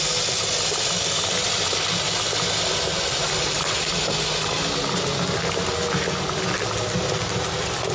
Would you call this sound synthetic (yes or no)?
no